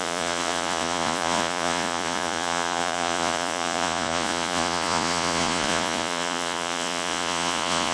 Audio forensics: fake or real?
fake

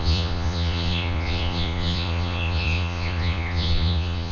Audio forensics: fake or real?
fake